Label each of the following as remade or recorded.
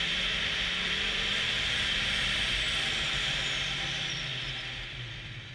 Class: recorded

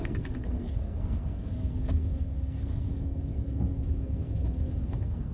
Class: remade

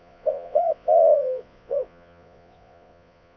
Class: remade